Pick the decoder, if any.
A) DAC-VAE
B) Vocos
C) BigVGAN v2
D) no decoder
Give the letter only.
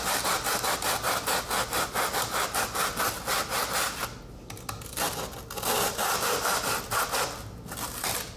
D